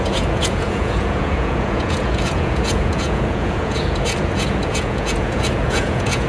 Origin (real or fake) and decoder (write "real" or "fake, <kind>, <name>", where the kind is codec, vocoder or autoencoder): fake, vocoder, Vocos